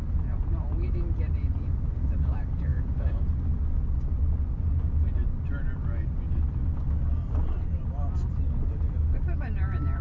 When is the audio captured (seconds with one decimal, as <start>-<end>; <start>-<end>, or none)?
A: 0.0-2.7; 3.3-10.0